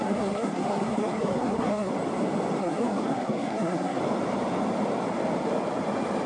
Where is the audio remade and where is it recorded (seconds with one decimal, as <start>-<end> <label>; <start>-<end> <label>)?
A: 0.0-1.9 remade; 1.9-2.6 recorded; 2.6-4.0 remade; 4.0-6.3 recorded